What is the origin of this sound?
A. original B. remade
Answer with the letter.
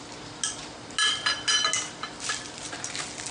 A